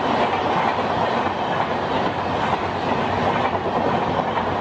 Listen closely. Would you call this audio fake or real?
real